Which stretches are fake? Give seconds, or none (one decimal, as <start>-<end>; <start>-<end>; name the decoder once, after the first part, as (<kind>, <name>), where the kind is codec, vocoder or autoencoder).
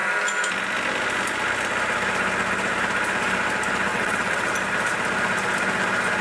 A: 3.9-4.5 (vocoder, WaveNeXt)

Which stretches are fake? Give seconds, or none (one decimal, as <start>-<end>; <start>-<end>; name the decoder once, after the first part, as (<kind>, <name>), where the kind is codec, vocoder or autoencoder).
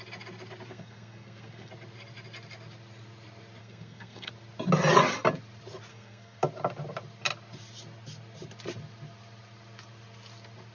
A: 0.7-1.7 (codec, SNAC); 3.6-4.3; 5.9-6.4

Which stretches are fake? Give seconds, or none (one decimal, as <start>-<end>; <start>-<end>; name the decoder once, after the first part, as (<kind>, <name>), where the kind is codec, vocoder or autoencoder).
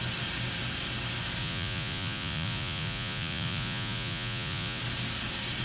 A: 1.4-4.8 (vocoder, Vocos)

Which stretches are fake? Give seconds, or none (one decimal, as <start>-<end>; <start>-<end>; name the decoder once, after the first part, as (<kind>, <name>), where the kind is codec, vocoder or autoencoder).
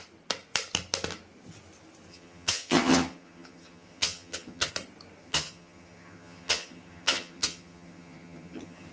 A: 2.1-4.7 (vocoder, HiFi-GAN); 5.2-8.9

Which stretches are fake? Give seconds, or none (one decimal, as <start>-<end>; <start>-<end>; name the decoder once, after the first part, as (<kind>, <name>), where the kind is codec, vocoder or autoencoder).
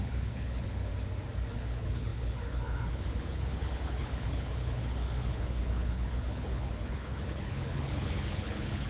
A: 0.0-0.9 (codec, HILCodec); 1.5-8.9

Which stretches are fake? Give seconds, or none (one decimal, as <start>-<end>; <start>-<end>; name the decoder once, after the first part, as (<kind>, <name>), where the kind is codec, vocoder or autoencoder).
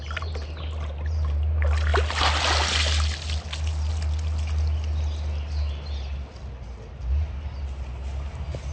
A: none